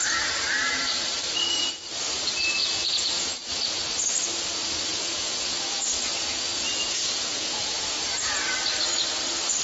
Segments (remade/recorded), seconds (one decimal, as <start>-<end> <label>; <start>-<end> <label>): 0.0-2.6 recorded; 2.6-3.5 remade; 3.5-4.9 recorded; 4.9-8.3 remade; 8.3-9.6 recorded